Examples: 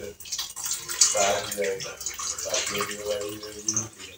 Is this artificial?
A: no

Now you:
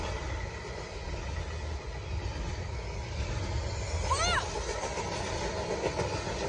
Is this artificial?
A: no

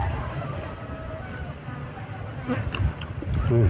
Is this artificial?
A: no